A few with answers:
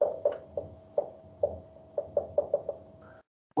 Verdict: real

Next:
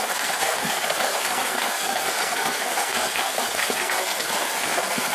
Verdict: fake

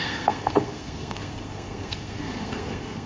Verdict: fake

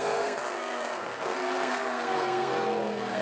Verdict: fake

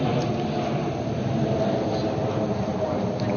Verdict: real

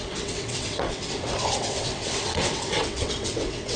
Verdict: fake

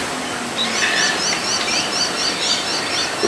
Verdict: real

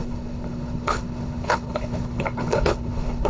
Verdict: fake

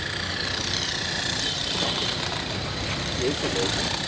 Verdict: real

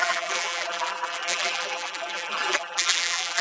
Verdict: fake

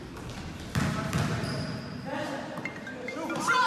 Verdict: real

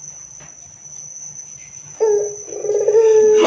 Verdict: real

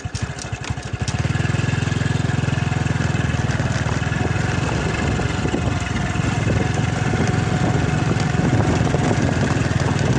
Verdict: real